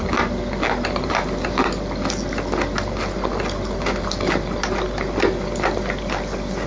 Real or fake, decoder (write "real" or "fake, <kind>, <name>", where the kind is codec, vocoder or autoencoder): real